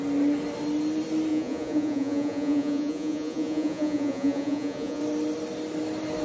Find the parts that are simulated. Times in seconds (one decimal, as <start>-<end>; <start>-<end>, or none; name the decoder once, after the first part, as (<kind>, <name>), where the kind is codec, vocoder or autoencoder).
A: 1.3-5.0 (vocoder, Vocos)